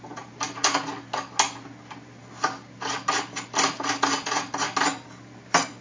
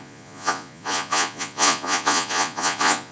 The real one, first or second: first